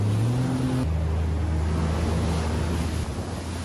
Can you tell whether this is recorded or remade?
recorded